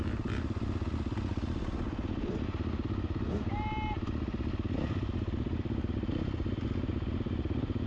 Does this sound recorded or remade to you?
recorded